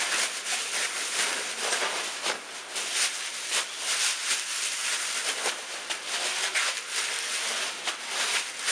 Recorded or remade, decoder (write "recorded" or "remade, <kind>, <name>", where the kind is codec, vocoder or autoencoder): recorded